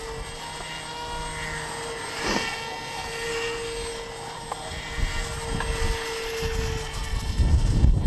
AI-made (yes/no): no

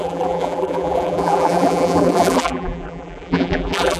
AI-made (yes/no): yes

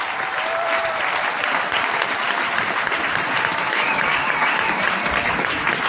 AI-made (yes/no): yes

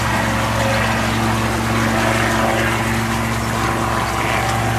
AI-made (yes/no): no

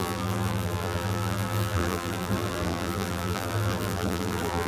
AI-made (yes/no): yes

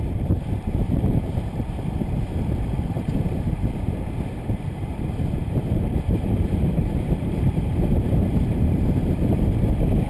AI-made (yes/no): yes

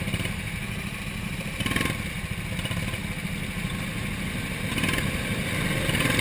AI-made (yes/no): no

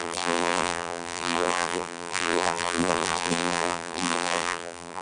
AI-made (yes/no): yes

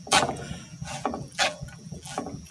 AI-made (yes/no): yes